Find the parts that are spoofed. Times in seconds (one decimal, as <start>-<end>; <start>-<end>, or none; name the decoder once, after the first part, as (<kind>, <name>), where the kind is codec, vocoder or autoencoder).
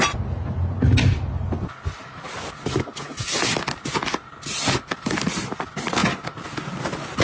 none